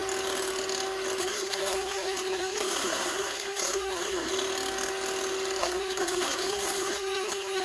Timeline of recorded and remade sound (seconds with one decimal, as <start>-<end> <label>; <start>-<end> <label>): 0.0-1.2 recorded; 1.2-4.3 remade; 4.3-5.6 recorded; 5.6-7.6 remade